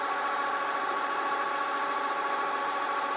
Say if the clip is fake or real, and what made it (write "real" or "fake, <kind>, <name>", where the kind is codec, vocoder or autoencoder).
real